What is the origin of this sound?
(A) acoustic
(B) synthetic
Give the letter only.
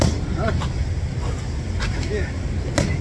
A